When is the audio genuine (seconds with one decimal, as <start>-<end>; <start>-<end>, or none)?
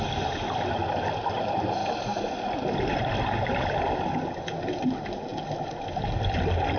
0.0-6.8